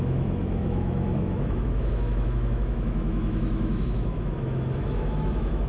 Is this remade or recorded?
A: remade